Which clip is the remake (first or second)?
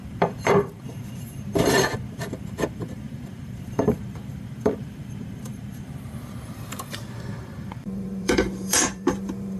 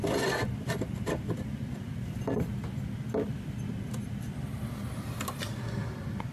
first